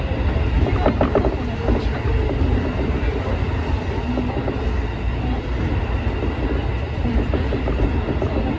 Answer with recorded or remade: recorded